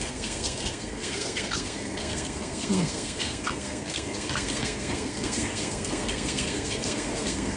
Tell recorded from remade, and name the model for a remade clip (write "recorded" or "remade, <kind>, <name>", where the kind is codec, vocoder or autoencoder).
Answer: remade, codec, SNAC